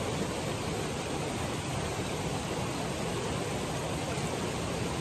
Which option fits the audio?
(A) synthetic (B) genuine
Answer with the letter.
B